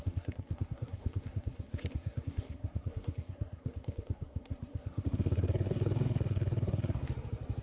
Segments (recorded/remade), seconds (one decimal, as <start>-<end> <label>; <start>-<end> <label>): 0.0-7.0 remade; 7.0-7.6 recorded